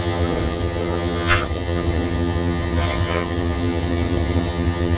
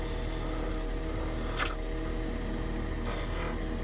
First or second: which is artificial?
first